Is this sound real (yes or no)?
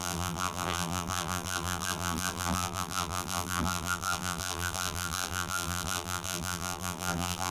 no